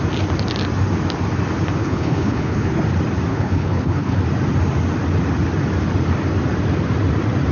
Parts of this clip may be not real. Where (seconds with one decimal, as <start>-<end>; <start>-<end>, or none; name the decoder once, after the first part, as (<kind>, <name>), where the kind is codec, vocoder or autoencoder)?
1.8-2.8 (codec, HILCodec); 3.3-4.2